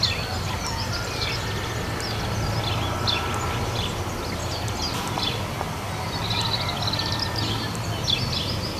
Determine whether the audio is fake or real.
real